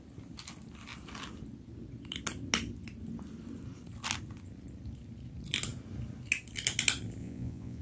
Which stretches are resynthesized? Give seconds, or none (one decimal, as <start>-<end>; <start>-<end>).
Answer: 7.2-7.8